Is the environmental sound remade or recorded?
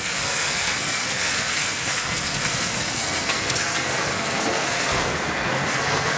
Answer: remade